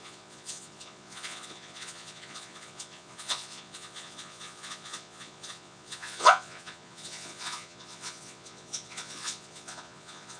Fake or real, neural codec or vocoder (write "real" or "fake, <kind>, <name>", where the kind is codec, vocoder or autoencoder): fake, vocoder, Vocos